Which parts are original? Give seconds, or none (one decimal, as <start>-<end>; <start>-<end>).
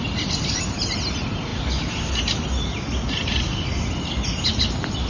0.0-5.1